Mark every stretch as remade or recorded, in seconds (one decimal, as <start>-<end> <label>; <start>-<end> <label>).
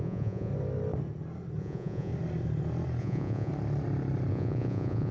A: 0.0-0.5 remade; 0.5-1.6 recorded; 1.6-2.1 remade; 2.1-3.0 recorded; 3.0-3.5 remade; 3.5-4.3 recorded; 4.3-5.1 remade